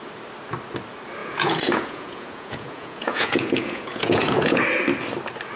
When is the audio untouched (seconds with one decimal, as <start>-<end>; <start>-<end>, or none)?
0.0-1.2; 4.6-5.6